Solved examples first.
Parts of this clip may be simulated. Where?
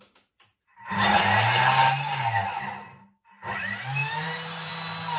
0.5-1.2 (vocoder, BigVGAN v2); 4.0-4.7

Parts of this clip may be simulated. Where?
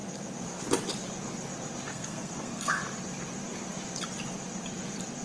1.9-2.8 (codec, SNAC)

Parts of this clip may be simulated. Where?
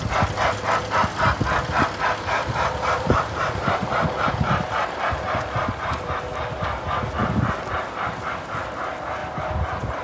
2.4-6.2 (vocoder, BigVGAN v2); 9.2-10.0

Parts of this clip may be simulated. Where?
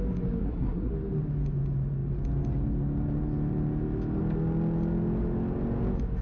0.4-0.9 (codec, SNAC)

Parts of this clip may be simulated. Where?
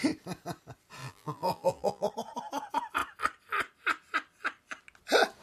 1.0-2.1 (vocoder, BigVGAN v2)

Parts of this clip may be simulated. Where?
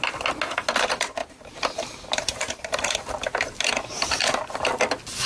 1.2-4.4 (vocoder, BigVGAN v2)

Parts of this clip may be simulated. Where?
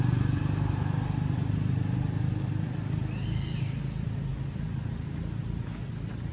none